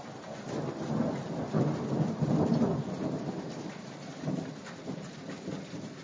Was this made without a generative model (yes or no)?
yes